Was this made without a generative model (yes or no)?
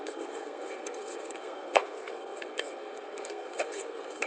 no